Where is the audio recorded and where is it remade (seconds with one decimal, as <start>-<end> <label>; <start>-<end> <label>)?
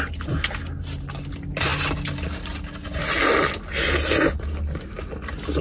0.0-5.6 recorded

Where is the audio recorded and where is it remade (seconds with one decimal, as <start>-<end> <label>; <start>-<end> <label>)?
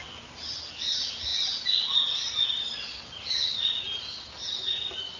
0.0-5.2 recorded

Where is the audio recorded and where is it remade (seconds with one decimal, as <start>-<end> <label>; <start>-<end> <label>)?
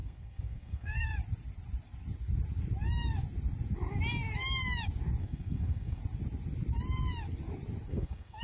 0.0-1.1 remade; 1.1-5.2 recorded; 5.2-6.0 remade; 6.0-7.9 recorded; 7.9-8.4 remade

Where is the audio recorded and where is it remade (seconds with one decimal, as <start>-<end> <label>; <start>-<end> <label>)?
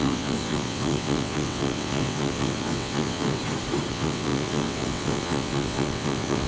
0.0-3.4 remade; 3.4-3.9 recorded; 3.9-6.5 remade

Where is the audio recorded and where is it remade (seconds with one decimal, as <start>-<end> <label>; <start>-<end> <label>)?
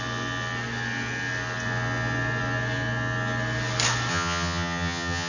0.0-4.1 recorded; 4.1-5.3 remade